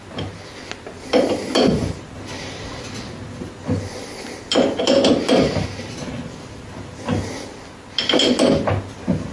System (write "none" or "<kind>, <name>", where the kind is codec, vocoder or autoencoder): none